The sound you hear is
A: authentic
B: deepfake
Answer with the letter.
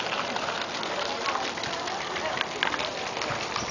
A